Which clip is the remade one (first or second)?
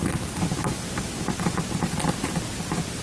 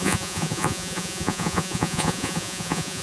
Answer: second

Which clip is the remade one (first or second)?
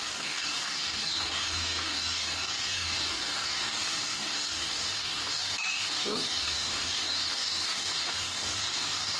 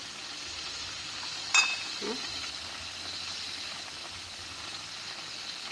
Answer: first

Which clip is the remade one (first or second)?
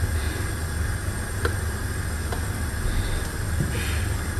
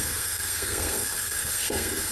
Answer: second